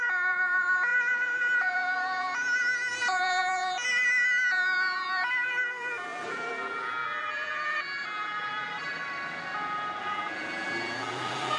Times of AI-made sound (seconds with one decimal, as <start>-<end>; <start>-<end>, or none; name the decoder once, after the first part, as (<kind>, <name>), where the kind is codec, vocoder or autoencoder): 0.0-9.0 (vocoder, BigVGAN v2); 10.0-11.6